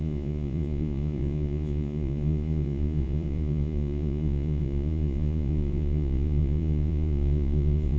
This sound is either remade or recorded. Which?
remade